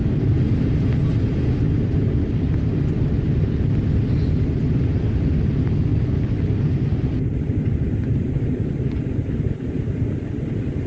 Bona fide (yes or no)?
yes